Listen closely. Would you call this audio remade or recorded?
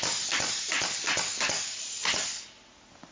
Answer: recorded